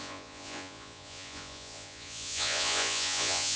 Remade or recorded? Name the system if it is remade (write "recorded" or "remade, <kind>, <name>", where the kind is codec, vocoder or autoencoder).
remade, vocoder, Vocos